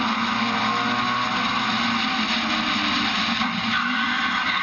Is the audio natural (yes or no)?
yes